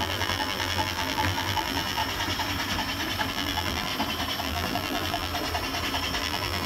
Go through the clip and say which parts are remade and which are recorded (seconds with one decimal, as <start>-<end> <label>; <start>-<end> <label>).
0.0-2.0 remade; 2.0-3.3 recorded; 3.3-3.9 remade; 3.9-4.4 recorded; 4.4-5.3 remade; 5.3-6.2 recorded; 6.2-6.7 remade